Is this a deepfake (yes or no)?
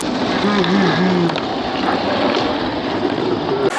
no